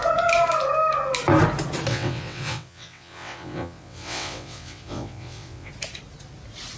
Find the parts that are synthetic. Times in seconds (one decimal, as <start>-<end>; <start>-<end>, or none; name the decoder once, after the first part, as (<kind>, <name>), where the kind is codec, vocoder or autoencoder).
1.9-5.7 (vocoder, WaveNeXt)